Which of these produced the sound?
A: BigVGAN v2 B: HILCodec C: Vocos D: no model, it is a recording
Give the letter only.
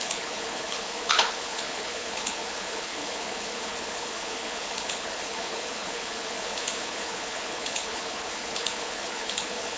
B